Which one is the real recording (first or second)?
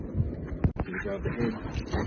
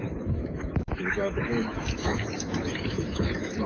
first